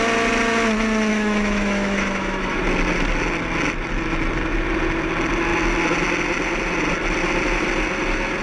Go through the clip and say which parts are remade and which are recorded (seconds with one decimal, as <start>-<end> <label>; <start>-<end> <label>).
0.0-1.1 recorded; 1.1-2.6 remade; 2.6-8.4 recorded